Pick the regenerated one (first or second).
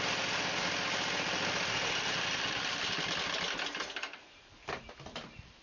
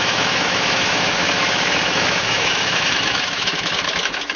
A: second